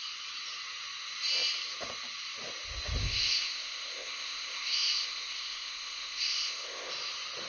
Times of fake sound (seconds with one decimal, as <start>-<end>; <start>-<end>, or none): 3.0-6.9